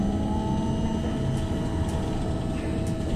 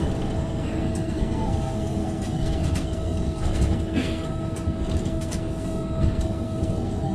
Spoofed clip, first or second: second